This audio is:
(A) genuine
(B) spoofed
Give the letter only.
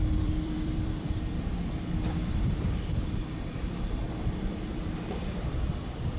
B